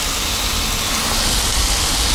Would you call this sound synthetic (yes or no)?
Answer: no